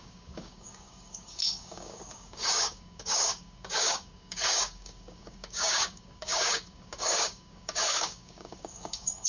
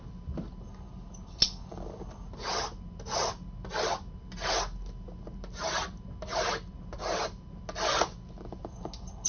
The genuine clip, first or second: second